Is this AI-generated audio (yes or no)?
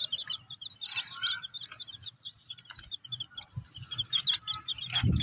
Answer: no